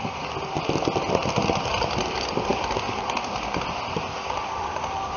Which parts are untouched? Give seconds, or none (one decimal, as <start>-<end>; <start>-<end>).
0.0-5.2